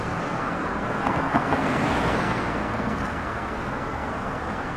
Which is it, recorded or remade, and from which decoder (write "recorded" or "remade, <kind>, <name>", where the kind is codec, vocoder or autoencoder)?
remade, codec, SNAC